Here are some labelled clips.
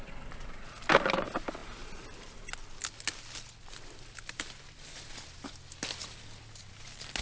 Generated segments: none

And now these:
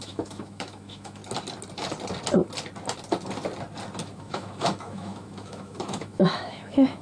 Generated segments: 0.0-1.2 (autoencoder, DAC-VAE); 4.0-7.0

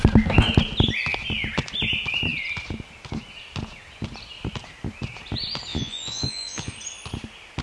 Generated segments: 5.7-6.7 (vocoder, Vocos)

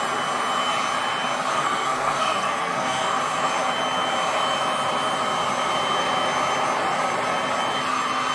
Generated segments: 1.5-3.2 (codec, SNAC)

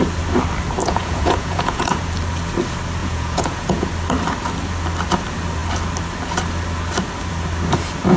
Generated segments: 0.8-2.0 (vocoder, Vocos); 3.0-3.9

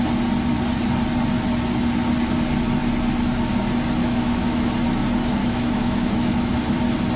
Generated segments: 4.0-4.7 (autoencoder, DAC-VAE); 5.4-6.5